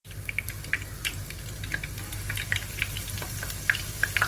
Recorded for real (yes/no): yes